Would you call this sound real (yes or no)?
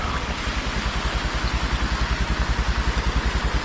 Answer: yes